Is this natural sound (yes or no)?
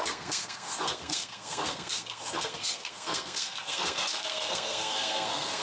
no